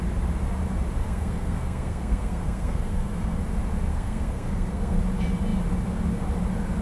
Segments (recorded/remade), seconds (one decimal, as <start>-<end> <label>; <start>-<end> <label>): 0.0-1.0 recorded; 1.0-3.4 remade; 3.4-3.9 recorded; 3.9-5.0 remade; 5.0-6.8 recorded